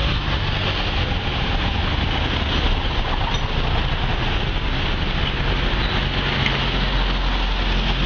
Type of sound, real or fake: real